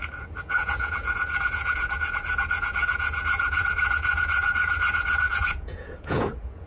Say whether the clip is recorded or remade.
remade